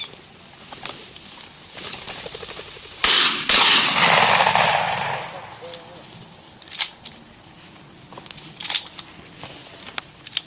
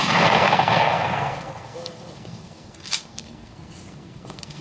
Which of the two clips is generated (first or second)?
second